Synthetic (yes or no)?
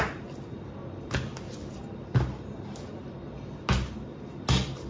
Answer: no